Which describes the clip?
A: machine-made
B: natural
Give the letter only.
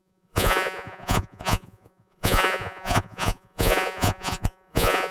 A